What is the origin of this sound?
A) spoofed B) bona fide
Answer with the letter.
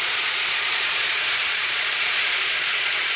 A